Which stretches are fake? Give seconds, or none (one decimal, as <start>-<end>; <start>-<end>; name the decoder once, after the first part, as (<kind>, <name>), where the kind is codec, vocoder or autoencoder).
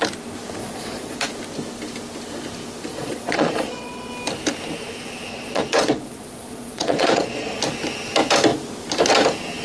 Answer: 0.6-1.3 (vocoder, Vocos); 2.9-4.1; 5.3-7.6